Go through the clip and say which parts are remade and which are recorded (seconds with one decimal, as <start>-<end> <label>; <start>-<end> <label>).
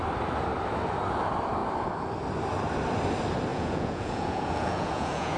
0.0-3.5 recorded; 3.5-5.4 remade